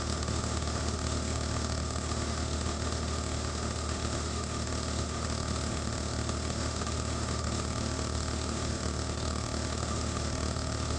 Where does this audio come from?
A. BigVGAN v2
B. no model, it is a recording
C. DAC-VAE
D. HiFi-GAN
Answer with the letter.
C